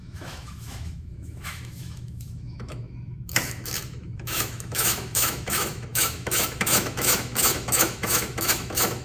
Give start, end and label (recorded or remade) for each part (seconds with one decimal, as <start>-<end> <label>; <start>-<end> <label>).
0.0-9.0 remade